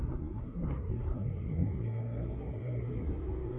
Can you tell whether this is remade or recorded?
remade